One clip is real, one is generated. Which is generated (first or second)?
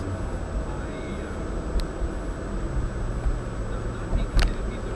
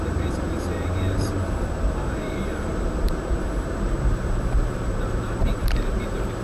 second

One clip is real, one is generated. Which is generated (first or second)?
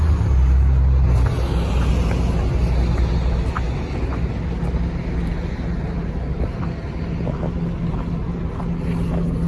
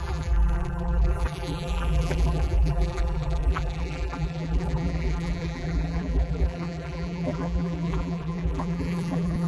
second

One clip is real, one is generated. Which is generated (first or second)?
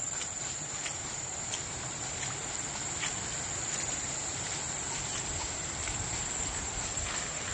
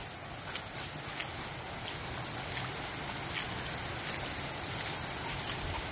first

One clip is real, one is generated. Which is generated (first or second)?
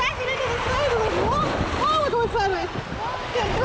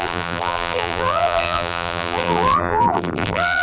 second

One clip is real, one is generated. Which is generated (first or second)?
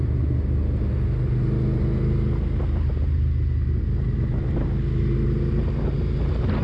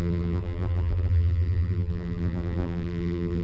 second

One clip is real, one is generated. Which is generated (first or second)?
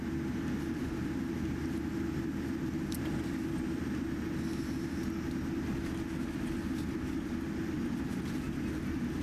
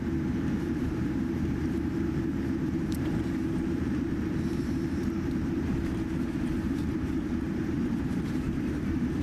second